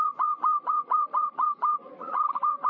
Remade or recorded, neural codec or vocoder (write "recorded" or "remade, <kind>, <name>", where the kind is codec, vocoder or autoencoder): remade, vocoder, Vocos